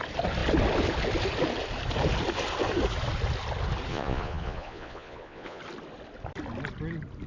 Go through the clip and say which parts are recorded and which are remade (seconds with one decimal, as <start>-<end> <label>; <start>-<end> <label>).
0.0-3.9 recorded; 3.9-5.6 remade; 5.6-7.3 recorded